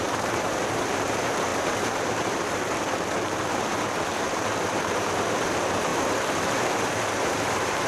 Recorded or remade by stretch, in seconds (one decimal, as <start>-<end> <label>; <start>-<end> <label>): 0.0-7.9 remade